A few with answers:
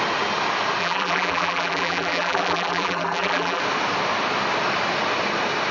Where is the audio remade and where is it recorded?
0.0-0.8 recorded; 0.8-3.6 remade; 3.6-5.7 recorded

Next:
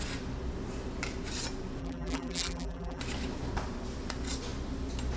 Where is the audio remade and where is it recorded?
0.0-1.8 recorded; 1.8-3.0 remade; 3.0-5.2 recorded